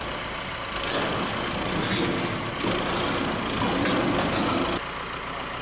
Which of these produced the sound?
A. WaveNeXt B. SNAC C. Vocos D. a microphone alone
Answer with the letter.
D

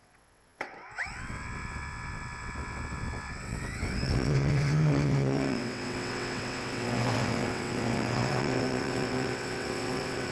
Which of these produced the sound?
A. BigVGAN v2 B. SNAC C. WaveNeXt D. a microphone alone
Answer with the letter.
C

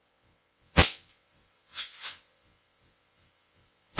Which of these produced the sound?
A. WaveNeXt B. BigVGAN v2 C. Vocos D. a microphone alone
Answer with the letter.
A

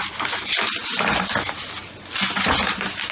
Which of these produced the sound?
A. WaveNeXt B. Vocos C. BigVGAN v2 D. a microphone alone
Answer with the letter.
D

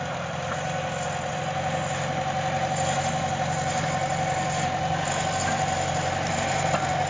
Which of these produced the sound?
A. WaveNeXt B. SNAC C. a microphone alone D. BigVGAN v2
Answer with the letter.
C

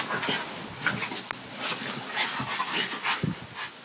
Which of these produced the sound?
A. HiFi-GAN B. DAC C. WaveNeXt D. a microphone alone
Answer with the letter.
D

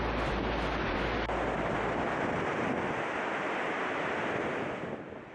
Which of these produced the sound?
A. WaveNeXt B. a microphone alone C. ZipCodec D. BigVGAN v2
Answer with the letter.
B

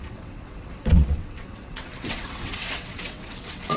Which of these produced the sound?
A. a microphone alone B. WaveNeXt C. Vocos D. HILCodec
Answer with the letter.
B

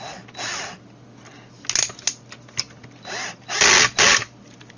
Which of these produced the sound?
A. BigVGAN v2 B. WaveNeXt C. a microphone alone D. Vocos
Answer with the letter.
C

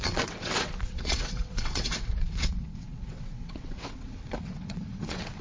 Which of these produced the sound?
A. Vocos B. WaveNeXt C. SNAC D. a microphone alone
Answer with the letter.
B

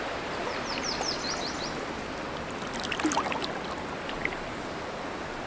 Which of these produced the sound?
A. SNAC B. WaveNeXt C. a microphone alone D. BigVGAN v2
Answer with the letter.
C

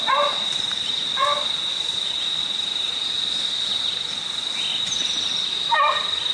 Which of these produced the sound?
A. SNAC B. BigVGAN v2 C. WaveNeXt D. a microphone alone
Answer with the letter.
D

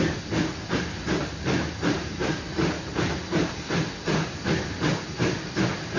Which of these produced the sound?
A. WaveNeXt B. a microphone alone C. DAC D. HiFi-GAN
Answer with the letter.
B